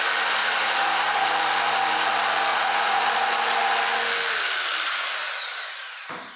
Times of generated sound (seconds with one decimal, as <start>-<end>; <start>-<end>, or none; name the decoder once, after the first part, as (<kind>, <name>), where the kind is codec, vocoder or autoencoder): 0.4-1.3 (vocoder, Vocos); 2.5-3.0